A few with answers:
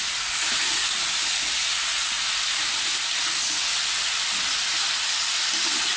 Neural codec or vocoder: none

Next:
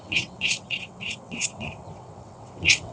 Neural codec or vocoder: vocoder, WaveNeXt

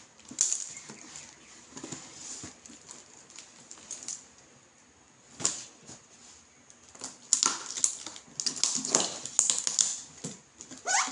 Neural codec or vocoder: none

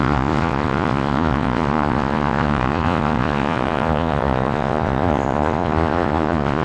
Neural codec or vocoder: vocoder, Vocos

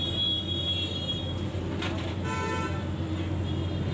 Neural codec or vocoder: none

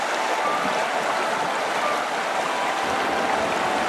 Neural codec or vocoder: none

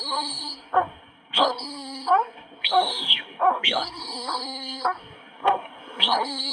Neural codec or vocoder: codec, SNAC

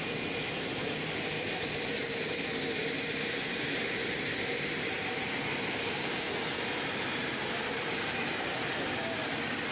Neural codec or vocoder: vocoder, BigVGAN v2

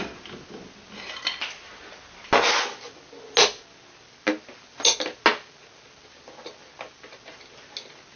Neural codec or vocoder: none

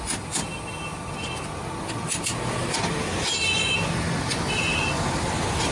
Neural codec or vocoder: none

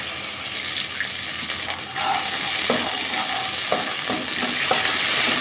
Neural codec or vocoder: none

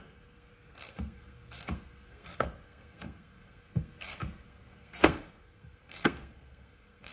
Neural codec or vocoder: codec, SNAC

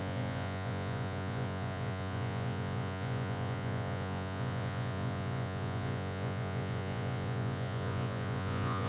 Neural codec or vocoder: vocoder, Vocos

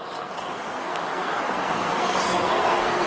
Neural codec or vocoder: codec, SNAC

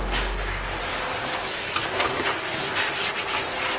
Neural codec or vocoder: none